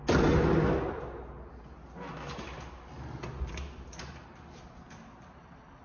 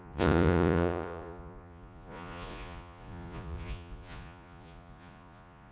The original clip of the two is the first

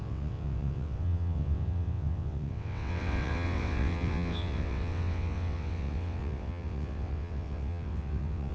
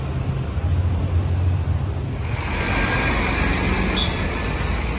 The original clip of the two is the second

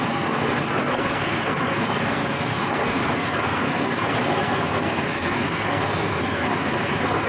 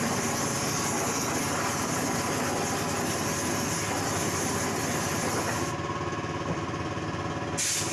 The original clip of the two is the second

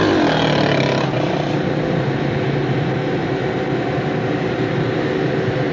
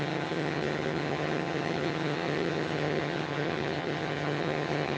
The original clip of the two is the first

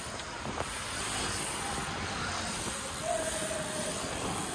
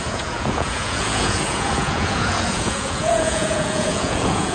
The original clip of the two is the first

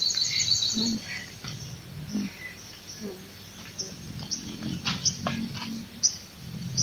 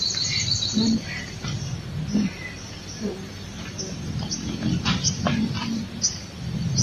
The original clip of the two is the first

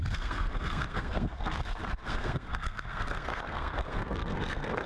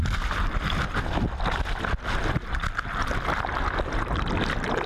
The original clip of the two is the second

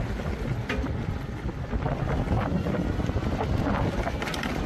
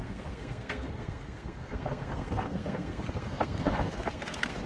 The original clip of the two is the first